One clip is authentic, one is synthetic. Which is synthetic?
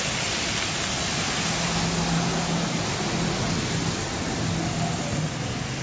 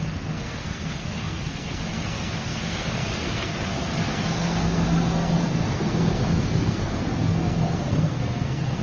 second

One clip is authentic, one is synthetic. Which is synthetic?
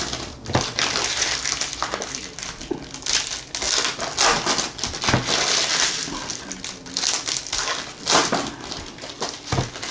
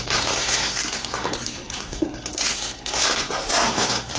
second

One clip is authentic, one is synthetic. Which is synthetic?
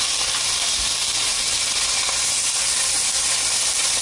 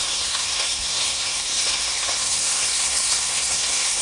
second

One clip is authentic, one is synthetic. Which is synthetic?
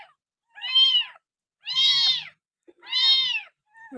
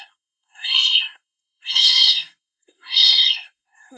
second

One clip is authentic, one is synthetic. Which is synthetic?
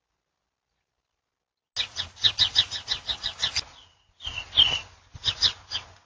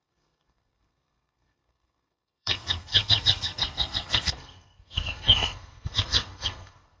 second